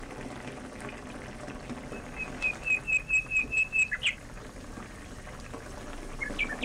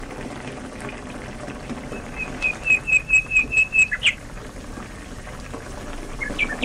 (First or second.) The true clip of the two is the first